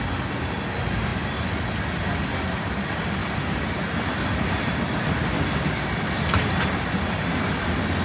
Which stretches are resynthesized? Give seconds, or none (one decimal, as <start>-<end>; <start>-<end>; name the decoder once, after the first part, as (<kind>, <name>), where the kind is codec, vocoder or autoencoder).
none